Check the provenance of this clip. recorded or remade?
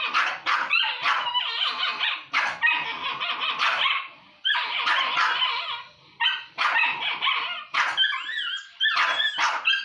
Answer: recorded